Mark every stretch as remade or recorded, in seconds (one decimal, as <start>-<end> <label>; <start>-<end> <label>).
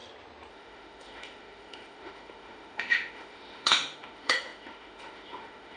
0.0-0.5 recorded; 0.5-5.8 remade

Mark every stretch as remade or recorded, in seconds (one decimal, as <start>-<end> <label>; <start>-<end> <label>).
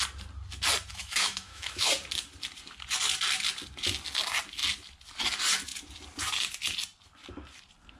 0.0-0.9 recorded; 0.9-1.9 remade; 1.9-8.0 recorded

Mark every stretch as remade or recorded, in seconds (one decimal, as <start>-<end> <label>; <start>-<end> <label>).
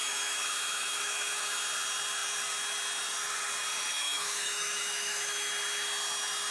0.0-1.6 remade; 1.6-3.9 recorded; 3.9-5.5 remade; 5.5-6.5 recorded